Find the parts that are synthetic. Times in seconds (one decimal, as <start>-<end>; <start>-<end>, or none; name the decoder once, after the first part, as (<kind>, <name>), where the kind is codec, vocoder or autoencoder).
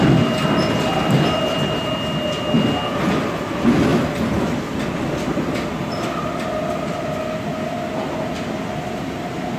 3.9-4.8 (vocoder, BigVGAN v2)